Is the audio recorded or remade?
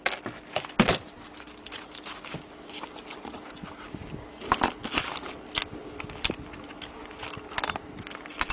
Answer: recorded